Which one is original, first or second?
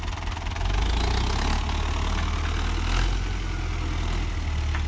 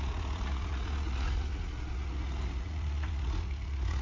first